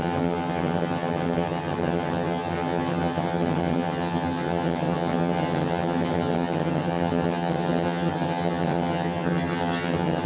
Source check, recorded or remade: remade